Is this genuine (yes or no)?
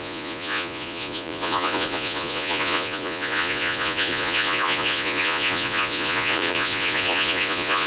no